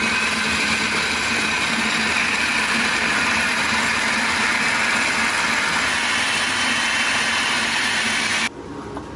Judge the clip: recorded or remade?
recorded